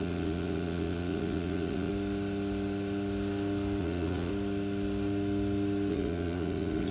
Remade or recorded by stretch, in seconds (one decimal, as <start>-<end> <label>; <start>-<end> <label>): 0.0-1.9 remade; 1.9-3.8 recorded; 3.8-4.3 remade; 4.3-5.9 recorded; 5.9-6.9 remade